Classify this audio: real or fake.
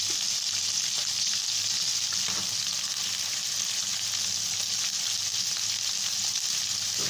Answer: real